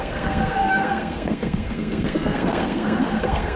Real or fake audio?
fake